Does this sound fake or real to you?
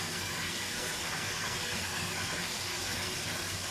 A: fake